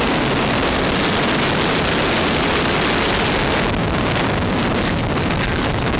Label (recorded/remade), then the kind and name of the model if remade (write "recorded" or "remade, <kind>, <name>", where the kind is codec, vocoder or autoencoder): recorded